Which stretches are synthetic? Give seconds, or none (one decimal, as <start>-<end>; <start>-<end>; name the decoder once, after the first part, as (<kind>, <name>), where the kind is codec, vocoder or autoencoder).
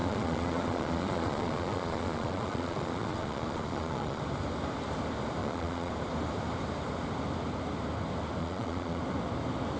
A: 0.0-4.2 (vocoder, Vocos); 5.4-5.9; 8.4-9.0